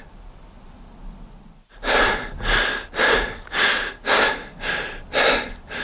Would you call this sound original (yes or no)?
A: yes